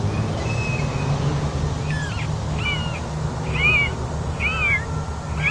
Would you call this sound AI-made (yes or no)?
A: no